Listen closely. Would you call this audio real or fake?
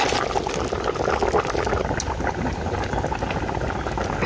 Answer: real